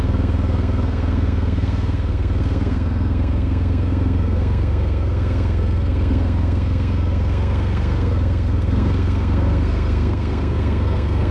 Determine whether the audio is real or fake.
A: fake